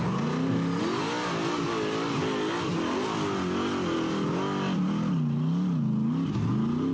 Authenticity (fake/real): real